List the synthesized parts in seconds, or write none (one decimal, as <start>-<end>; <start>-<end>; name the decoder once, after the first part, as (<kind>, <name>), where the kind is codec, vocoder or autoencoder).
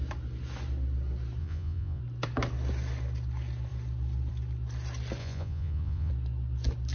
1.4-2.0 (vocoder, Vocos); 5.2-6.1